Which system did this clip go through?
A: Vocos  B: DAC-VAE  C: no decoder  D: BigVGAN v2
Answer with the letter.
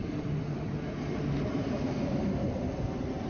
C